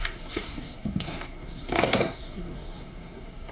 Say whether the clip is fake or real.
fake